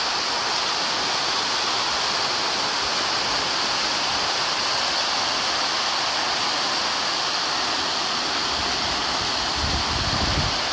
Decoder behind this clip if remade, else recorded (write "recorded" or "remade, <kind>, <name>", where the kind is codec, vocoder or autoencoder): recorded